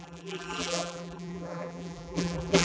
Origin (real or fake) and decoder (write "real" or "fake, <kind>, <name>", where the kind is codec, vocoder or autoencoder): fake, vocoder, BigVGAN v2